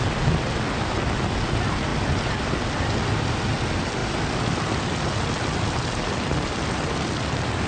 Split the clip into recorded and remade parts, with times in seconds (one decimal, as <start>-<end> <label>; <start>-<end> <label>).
0.0-7.7 recorded